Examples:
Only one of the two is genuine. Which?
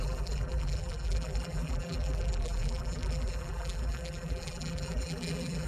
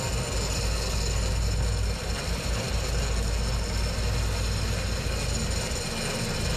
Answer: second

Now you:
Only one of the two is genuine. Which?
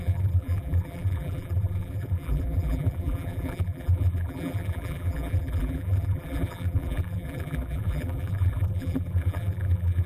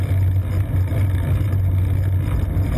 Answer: second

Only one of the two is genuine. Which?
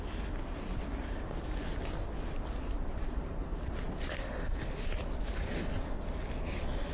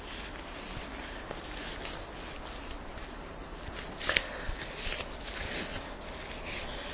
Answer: second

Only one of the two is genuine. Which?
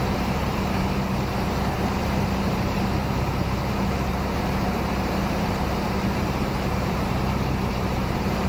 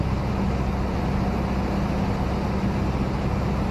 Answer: second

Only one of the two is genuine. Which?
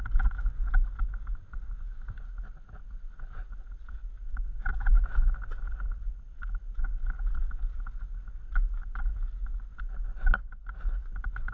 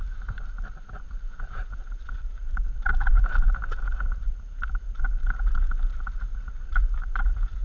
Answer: first